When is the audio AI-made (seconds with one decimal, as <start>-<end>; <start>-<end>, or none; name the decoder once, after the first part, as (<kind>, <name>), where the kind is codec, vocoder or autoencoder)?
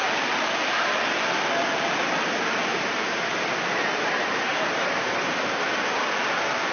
2.7-5.7 (vocoder, BigVGAN v2)